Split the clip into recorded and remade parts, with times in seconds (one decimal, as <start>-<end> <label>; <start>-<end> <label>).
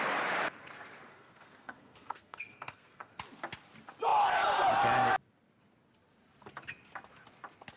0.0-1.1 recorded; 1.1-3.1 remade; 3.1-7.8 recorded